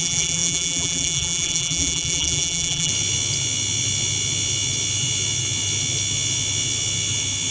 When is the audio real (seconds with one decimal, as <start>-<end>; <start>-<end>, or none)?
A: 2.9-7.5